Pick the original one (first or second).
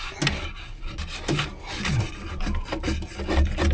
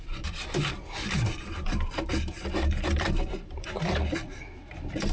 first